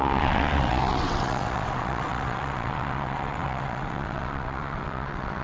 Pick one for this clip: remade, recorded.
remade